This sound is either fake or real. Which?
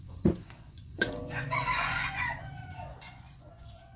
fake